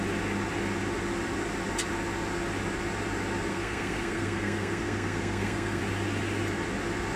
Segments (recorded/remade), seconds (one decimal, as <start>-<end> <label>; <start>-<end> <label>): 0.0-3.5 recorded; 3.5-5.8 remade; 5.8-7.2 recorded